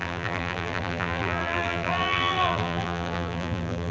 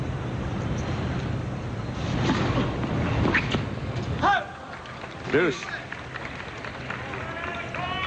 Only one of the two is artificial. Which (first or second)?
first